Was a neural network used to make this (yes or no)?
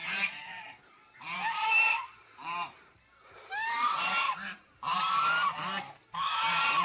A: yes